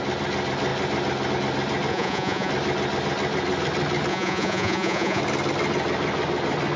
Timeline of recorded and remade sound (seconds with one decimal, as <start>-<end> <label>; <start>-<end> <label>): 0.0-1.9 recorded; 1.9-2.5 remade; 2.5-4.1 recorded; 4.1-5.2 remade; 5.2-6.8 recorded